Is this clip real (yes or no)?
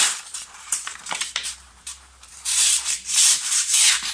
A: no